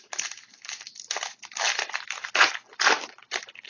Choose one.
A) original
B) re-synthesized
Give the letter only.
A